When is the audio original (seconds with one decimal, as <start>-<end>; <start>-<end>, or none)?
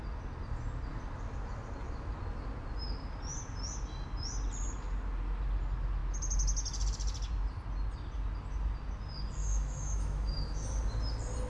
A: 0.0-9.4; 10.3-11.5